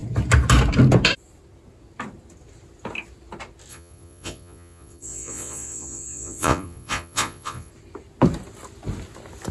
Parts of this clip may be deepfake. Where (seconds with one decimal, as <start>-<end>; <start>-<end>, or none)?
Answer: 3.7-7.7